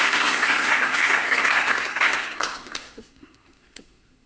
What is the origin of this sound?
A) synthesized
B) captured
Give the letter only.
A